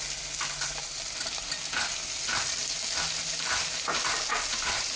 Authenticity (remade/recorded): recorded